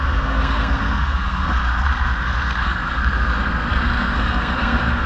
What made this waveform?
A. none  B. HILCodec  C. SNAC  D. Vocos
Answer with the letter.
C